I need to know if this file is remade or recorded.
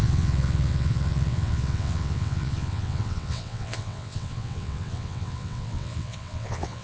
remade